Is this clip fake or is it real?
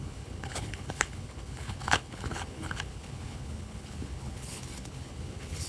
fake